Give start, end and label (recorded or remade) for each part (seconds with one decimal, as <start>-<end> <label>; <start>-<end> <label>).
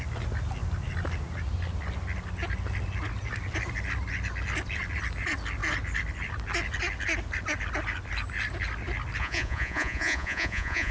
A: 0.0-9.2 recorded; 9.2-10.9 remade